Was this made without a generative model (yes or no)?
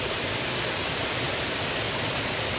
yes